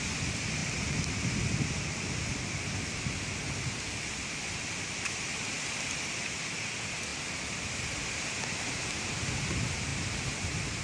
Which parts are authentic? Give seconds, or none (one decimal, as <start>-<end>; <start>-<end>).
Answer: 0.0-10.8